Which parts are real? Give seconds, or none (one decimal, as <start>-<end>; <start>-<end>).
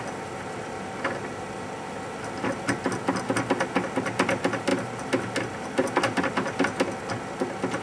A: 0.0-7.8